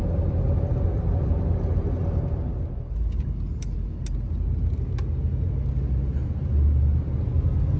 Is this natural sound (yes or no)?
yes